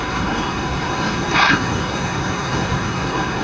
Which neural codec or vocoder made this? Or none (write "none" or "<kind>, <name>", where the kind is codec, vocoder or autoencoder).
codec, SNAC